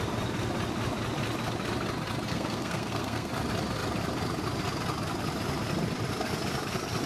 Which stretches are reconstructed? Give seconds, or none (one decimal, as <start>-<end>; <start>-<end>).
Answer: 2.3-3.3